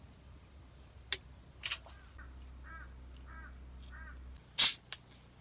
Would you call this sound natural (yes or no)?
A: yes